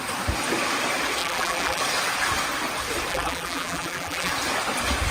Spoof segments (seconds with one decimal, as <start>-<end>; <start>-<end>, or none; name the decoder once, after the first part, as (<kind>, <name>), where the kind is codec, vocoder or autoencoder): 1.2-1.8 (vocoder, BigVGAN v2); 3.1-4.3